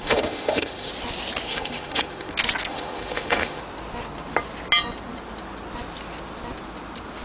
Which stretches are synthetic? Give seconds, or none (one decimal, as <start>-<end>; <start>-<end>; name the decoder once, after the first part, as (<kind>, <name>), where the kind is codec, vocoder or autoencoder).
0.0-0.9 (autoencoder, DAC-VAE); 1.5-2.3; 2.7-3.6